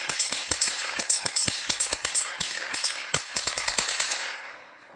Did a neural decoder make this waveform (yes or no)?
yes